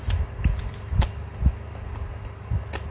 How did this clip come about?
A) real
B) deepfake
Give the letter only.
A